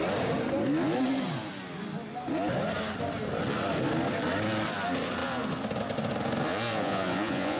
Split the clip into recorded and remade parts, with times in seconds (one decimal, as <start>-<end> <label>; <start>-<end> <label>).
0.0-6.5 recorded; 6.5-7.6 remade